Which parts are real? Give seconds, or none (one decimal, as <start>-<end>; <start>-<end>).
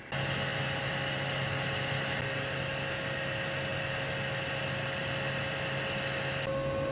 0.0-6.9